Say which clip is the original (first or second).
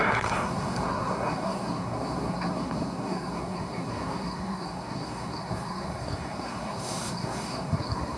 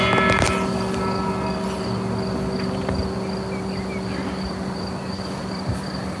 second